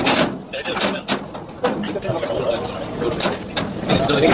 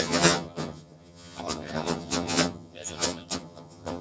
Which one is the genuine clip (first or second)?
first